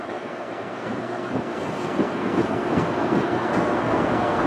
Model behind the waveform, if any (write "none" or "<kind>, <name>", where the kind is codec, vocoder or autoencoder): codec, SNAC